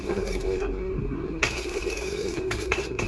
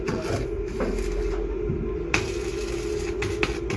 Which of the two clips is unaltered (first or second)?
second